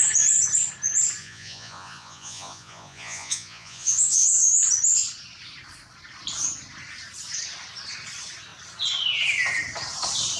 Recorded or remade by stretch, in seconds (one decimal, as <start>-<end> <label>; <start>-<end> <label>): 0.0-1.2 recorded; 1.2-4.6 remade; 4.6-10.4 recorded